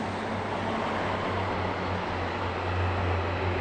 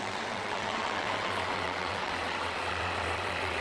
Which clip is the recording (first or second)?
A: first